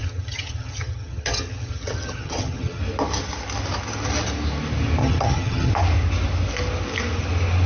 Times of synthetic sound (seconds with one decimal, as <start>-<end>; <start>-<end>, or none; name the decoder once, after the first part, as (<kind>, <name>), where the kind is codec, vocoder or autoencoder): 0.0-2.8 (vocoder, HiFi-GAN); 5.0-5.7